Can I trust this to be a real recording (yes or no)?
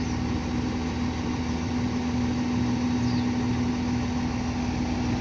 yes